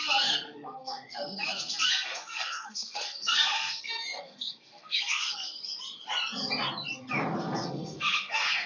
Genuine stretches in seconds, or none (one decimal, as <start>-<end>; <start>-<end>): 5.6-7.4